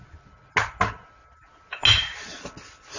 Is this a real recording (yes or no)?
yes